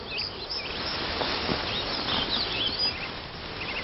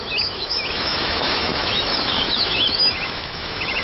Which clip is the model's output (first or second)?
second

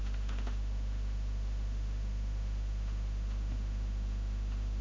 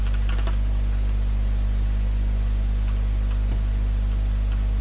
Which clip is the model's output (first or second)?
first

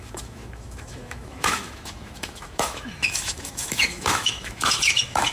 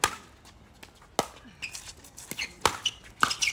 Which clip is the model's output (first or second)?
first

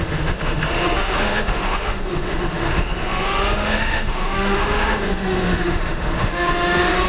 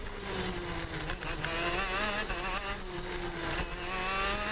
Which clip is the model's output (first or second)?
first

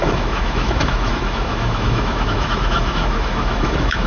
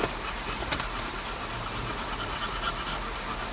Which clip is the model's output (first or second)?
first